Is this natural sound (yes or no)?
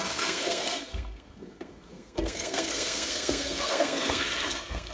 no